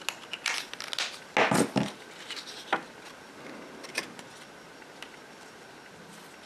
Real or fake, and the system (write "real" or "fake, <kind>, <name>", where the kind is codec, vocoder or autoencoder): real